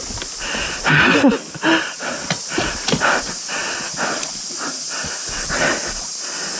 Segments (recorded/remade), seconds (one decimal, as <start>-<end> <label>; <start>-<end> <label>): 0.0-6.6 recorded